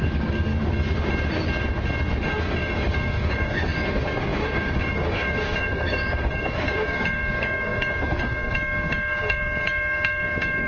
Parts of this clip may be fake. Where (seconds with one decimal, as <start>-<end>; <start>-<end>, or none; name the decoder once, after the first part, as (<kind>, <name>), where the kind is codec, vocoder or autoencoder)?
0.0-0.5 (codec, DAC); 2.4-10.7